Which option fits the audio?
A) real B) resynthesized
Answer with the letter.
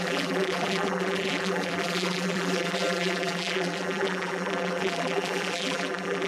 B